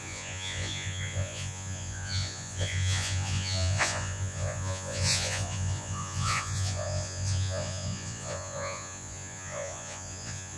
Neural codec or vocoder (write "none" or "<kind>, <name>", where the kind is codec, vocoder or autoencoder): vocoder, Vocos